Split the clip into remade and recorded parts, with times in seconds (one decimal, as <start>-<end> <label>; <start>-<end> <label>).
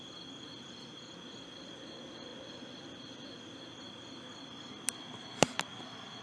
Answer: 0.0-6.2 recorded